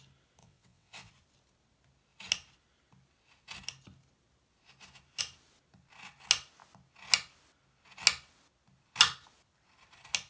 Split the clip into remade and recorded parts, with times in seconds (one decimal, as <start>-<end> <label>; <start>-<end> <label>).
0.0-0.4 recorded; 0.4-1.1 remade; 1.1-10.3 recorded